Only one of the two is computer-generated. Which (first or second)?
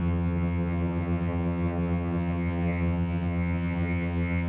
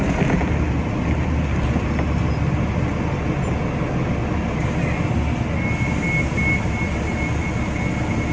first